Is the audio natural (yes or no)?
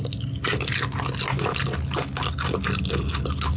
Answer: yes